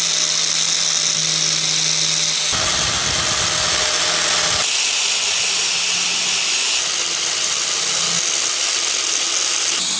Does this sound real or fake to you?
real